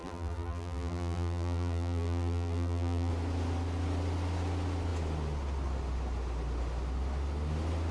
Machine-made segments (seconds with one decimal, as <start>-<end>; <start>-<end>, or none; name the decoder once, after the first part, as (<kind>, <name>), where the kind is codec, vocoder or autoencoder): 0.0-3.1 (vocoder, BigVGAN v2)